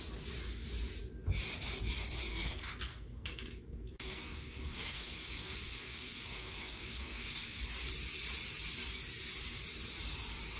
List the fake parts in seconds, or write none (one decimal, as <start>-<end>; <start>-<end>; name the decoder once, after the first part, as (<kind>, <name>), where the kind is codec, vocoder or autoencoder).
2.3-7.6 (codec, SNAC)